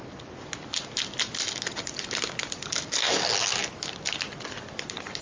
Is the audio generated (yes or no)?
no